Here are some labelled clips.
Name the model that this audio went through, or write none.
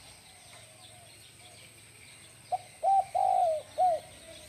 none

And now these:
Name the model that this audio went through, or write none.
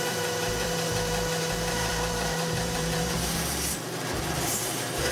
vocoder, BigVGAN v2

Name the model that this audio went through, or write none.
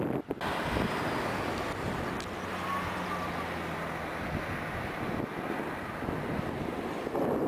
none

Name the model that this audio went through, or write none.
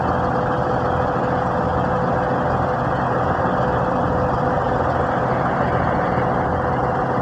none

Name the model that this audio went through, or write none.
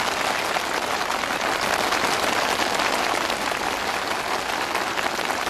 none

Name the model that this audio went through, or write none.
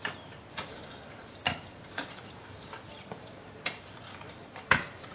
vocoder, BigVGAN v2